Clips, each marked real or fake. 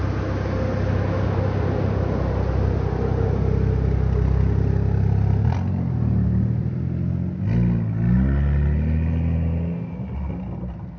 real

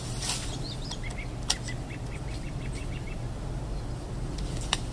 real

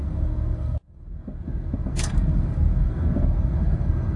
fake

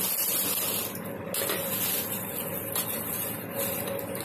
real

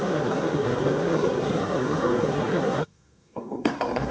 fake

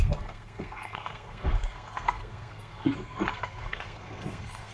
fake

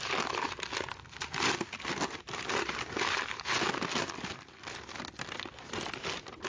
real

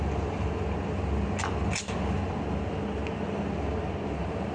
real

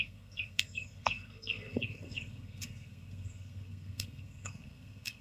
fake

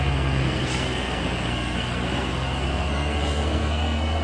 fake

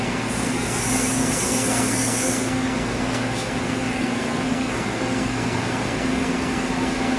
fake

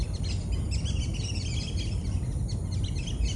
real